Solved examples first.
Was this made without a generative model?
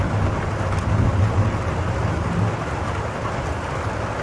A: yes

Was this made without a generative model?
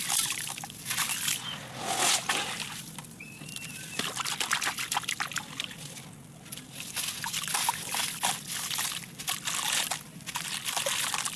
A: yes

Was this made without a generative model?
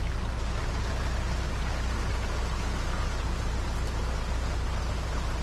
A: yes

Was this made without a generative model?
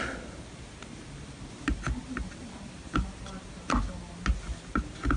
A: yes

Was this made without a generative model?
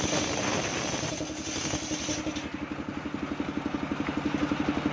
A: yes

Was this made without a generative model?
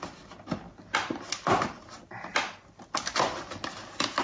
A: yes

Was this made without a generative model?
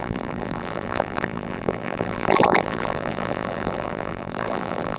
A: no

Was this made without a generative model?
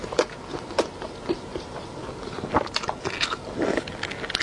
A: yes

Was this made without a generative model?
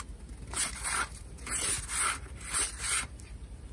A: no